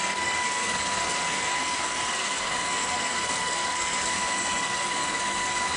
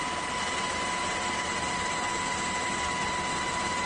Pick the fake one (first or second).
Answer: first